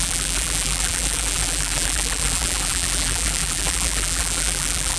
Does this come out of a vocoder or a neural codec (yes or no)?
yes